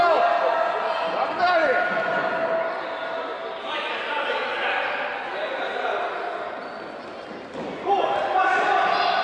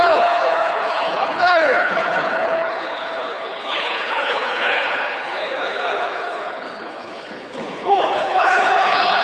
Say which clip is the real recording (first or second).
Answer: first